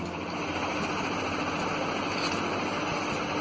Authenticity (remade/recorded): recorded